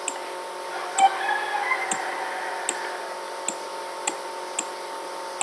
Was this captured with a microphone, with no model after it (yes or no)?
yes